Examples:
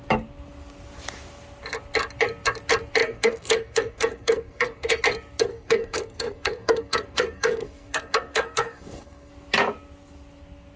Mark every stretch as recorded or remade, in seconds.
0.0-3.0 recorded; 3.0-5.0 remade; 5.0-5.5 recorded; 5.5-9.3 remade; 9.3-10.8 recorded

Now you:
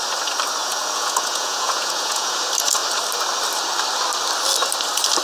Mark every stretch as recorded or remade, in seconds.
0.0-0.6 recorded; 0.6-2.4 remade; 2.4-5.2 recorded

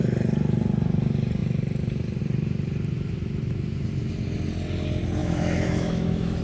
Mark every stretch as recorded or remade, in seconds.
0.0-5.2 recorded; 5.2-6.4 remade

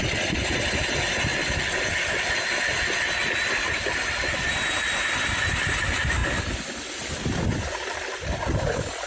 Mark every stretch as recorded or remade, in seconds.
0.0-9.1 recorded

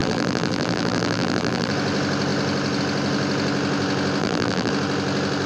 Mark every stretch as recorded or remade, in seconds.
0.0-1.7 remade; 1.7-4.2 recorded; 4.2-4.7 remade; 4.7-5.5 recorded

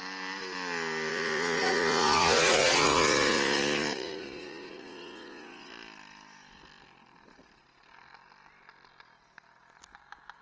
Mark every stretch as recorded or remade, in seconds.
0.0-1.1 recorded; 1.1-5.7 remade; 5.7-10.4 recorded

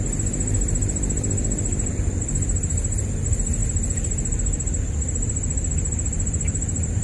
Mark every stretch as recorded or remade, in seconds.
0.0-7.0 recorded

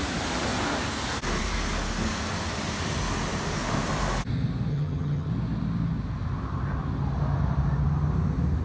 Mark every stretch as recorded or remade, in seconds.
0.0-4.7 recorded; 4.7-5.3 remade; 5.3-8.6 recorded